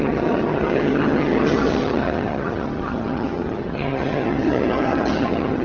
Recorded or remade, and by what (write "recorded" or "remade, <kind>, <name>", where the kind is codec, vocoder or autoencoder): remade, vocoder, HiFi-GAN